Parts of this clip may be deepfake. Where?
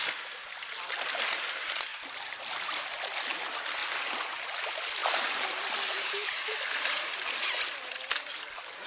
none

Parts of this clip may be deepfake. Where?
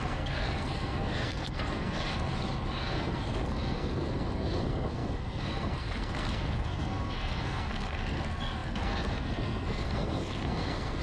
0.0-2.3 (codec, SNAC); 2.8-11.0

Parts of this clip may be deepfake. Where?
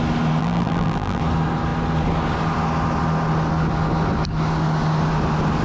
0.4-1.2 (vocoder, BigVGAN v2)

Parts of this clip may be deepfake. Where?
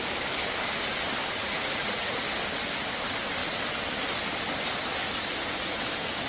1.4-2.1 (vocoder, Vocos)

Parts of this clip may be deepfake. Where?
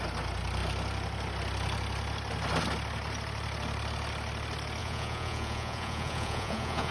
4.8-6.9 (vocoder, Vocos)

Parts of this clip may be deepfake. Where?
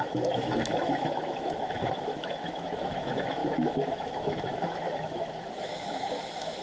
0.0-6.6 (autoencoder, DAC-VAE)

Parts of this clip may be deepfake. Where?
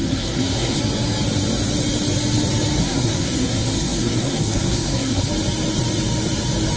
0.0-0.8 (codec, SNAC); 2.8-5.3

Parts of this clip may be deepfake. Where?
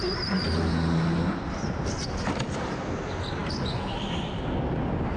none